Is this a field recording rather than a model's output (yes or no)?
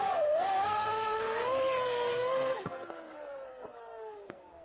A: no